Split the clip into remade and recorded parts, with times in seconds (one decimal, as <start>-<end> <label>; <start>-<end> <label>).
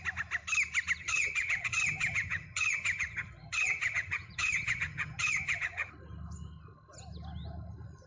0.0-1.0 recorded; 1.0-5.9 remade; 5.9-8.1 recorded